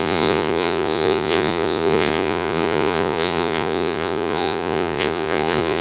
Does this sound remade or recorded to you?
remade